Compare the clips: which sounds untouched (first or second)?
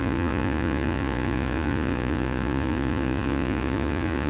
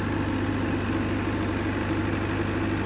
second